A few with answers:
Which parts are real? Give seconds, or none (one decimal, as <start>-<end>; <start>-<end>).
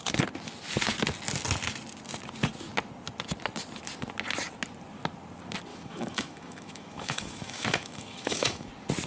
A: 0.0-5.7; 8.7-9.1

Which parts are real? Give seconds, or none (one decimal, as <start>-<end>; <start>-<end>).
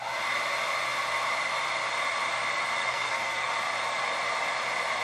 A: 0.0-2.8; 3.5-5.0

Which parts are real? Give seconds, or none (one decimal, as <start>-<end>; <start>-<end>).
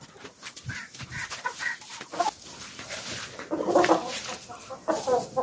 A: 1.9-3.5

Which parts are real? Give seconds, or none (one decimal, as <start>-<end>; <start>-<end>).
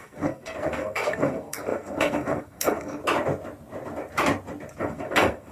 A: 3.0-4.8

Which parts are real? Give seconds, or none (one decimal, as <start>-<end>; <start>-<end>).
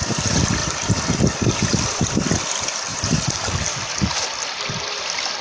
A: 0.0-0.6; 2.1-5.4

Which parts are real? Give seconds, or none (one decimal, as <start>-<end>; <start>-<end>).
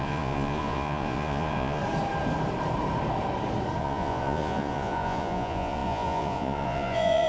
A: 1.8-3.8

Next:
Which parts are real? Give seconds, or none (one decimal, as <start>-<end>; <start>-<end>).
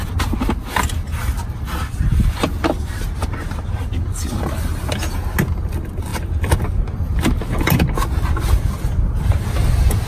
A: 0.0-10.1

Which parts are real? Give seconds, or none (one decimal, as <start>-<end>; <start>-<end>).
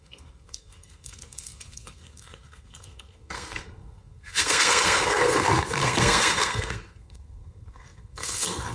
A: none